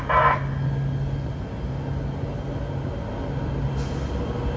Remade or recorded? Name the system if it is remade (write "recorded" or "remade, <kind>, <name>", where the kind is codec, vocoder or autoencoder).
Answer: recorded